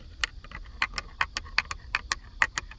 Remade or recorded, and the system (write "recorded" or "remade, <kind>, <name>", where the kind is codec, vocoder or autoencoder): recorded